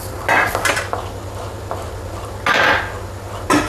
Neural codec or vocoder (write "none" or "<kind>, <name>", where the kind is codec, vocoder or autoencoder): none